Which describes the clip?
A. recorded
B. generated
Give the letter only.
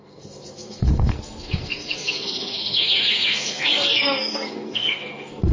B